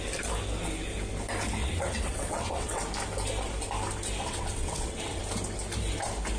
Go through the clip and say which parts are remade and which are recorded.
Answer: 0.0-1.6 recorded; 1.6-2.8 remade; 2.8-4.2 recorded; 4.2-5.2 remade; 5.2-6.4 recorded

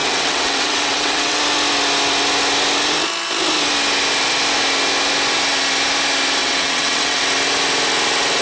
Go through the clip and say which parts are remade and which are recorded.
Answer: 0.0-1.4 remade; 1.4-6.4 recorded; 6.4-7.2 remade; 7.2-8.4 recorded

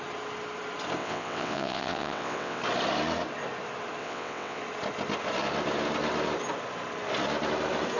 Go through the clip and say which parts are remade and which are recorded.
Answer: 0.0-1.0 recorded; 1.0-2.6 remade; 2.6-4.0 recorded; 4.0-4.6 remade; 4.6-8.0 recorded

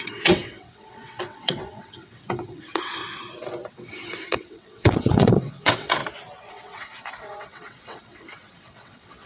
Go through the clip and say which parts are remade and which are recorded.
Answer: 0.0-3.0 remade; 3.0-3.7 recorded; 3.7-6.0 remade; 6.0-6.5 recorded; 6.5-9.3 remade

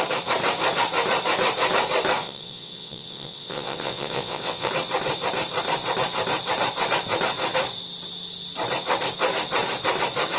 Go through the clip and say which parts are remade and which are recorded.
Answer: 0.0-2.2 recorded; 2.2-4.7 remade; 4.7-10.4 recorded

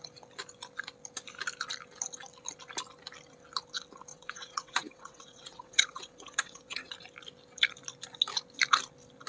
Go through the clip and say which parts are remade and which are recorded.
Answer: 0.0-4.1 recorded; 4.1-6.9 remade; 6.9-9.3 recorded